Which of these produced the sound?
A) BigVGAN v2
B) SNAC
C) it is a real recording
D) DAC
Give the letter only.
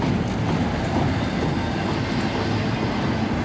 C